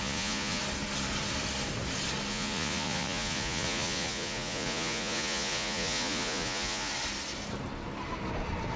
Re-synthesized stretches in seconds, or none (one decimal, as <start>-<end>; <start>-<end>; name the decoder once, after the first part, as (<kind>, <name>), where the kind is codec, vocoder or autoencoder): 0.0-0.6 (vocoder, Vocos); 2.3-6.9